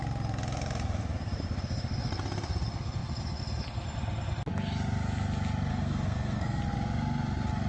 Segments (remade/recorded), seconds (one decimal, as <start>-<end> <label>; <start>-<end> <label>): 0.0-5.7 recorded; 5.7-6.6 remade; 6.6-7.7 recorded